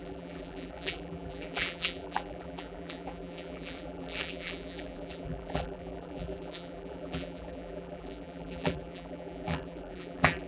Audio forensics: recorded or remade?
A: remade